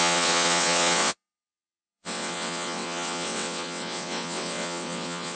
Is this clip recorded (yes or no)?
no